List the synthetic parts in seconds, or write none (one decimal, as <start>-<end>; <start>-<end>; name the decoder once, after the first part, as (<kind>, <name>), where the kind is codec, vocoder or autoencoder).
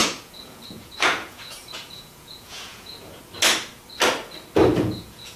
0.0-3.2 (vocoder, Vocos); 4.7-5.4